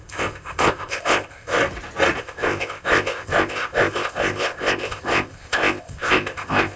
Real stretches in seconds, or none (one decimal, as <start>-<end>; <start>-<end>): 1.6-2.2